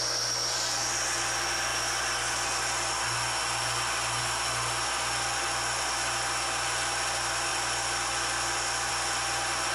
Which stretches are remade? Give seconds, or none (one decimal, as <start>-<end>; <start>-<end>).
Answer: none